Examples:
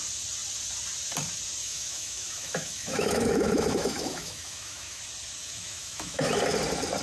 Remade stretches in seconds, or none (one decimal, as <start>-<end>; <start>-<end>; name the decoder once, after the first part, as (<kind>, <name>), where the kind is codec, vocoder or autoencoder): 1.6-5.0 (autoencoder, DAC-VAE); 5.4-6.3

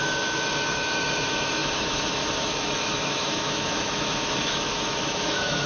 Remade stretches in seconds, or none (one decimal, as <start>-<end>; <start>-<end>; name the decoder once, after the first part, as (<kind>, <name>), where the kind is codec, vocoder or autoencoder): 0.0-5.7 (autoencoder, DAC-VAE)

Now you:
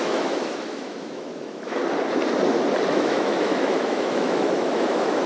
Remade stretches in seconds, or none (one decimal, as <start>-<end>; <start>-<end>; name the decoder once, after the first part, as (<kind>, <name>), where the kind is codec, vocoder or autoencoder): 0.0-1.8 (autoencoder, DAC-VAE); 2.9-5.3